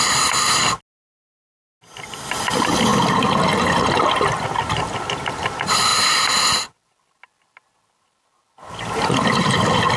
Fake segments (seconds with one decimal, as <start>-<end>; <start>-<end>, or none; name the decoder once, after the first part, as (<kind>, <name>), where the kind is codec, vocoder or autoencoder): none